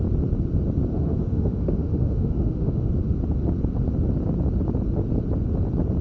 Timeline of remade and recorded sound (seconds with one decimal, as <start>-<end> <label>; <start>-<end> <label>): 0.0-0.9 recorded; 0.9-2.9 remade; 2.9-6.0 recorded